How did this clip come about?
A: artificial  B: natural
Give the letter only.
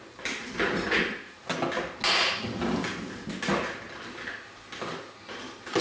B